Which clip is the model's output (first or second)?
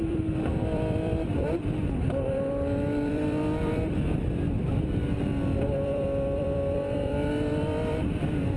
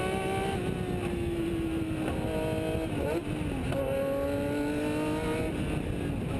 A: first